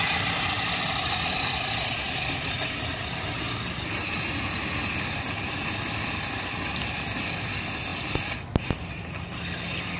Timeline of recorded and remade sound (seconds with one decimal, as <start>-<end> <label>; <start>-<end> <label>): 0.0-10.0 recorded